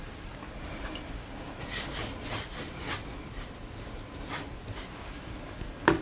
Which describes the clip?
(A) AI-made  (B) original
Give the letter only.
B